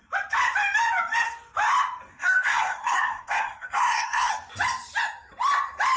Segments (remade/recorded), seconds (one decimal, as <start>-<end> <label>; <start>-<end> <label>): 0.0-2.1 recorded; 2.1-4.3 remade; 4.3-6.0 recorded